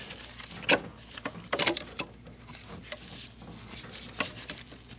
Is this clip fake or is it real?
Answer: real